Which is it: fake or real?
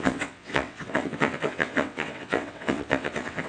fake